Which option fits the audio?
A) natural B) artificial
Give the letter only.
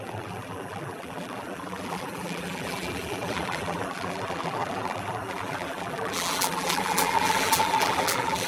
B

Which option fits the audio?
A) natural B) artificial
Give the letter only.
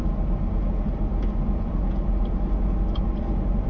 A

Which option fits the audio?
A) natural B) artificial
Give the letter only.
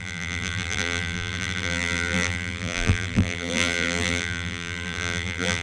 B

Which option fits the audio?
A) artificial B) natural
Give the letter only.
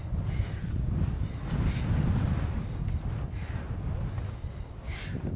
B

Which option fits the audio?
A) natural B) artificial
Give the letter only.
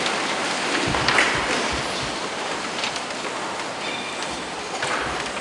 A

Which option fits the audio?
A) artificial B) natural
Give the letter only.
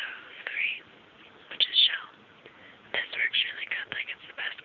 B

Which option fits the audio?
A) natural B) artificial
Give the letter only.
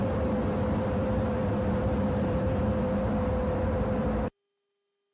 A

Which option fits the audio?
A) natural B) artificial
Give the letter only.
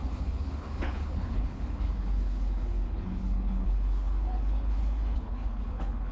B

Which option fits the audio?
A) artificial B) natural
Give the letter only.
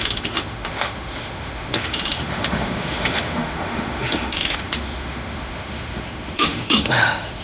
A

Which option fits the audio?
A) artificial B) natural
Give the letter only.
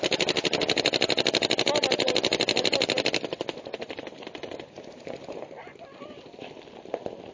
B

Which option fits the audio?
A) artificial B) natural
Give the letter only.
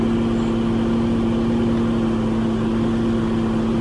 B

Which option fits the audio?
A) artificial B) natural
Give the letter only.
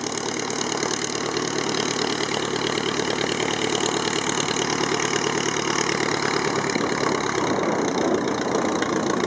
B